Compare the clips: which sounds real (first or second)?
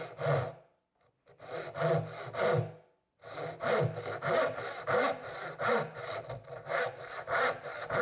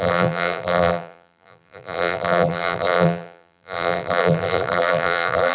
first